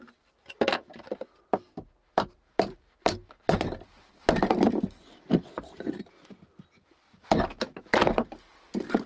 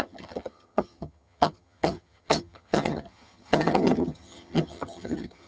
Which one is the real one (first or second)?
first